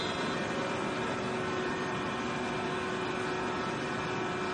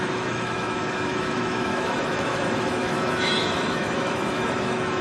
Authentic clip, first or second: first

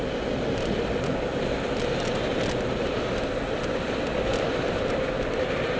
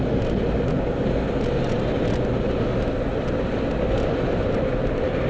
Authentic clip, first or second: second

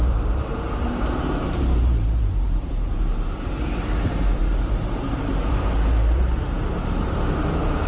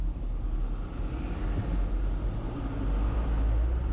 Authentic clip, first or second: second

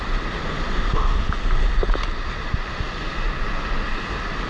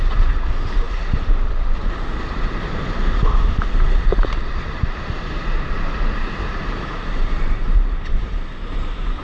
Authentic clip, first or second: first